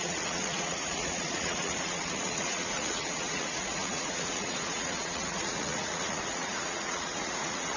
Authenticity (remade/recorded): remade